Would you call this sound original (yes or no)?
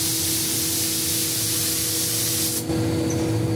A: yes